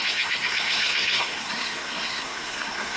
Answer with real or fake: fake